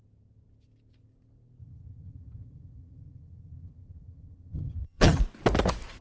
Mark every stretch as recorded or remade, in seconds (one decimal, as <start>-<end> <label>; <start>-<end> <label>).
0.0-1.6 recorded; 1.6-5.2 remade; 5.2-6.0 recorded